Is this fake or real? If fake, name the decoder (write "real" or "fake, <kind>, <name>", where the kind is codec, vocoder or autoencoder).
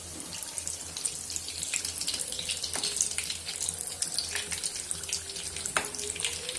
real